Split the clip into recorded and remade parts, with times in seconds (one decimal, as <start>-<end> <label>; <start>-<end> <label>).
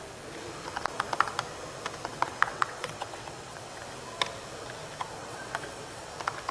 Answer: 0.0-2.1 recorded; 2.1-3.8 remade; 3.8-5.2 recorded; 5.2-6.1 remade; 6.1-6.5 recorded